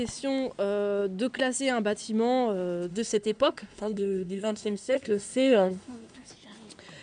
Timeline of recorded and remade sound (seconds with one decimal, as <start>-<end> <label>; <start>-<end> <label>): 0.0-2.9 recorded; 2.9-6.3 remade; 6.3-7.0 recorded